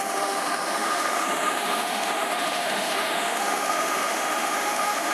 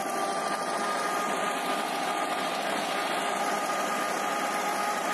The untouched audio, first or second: second